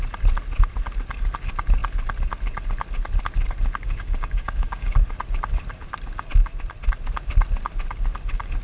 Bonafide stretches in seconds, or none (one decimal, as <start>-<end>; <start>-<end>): 0.0-3.8; 4.9-8.6